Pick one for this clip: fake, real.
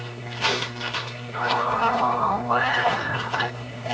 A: fake